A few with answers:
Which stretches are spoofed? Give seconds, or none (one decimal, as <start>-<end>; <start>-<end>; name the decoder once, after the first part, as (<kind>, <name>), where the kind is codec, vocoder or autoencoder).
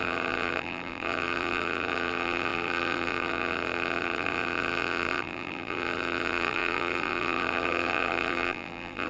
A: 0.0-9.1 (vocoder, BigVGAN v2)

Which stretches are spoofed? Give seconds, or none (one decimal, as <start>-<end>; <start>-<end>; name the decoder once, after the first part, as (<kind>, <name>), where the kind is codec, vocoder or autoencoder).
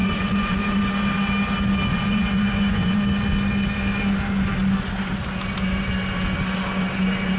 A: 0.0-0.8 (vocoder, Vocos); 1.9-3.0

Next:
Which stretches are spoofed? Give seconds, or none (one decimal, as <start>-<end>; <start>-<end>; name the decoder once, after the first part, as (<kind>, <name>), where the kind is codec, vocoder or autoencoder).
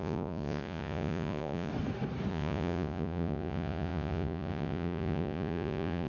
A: 0.0-1.7 (vocoder, Vocos); 2.3-6.1